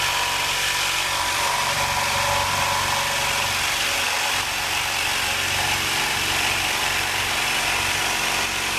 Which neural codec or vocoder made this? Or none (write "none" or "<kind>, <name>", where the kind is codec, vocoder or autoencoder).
vocoder, BigVGAN v2